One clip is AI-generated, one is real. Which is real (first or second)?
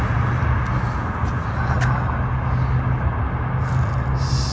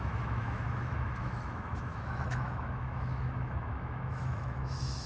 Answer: first